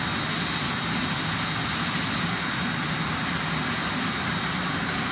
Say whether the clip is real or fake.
real